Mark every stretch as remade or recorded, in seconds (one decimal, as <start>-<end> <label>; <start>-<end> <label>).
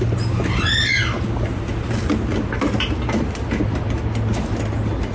0.0-5.1 recorded